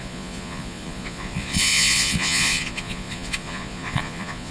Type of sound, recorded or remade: remade